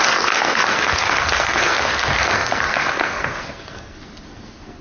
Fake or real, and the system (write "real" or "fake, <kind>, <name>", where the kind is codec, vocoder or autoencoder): fake, codec, SNAC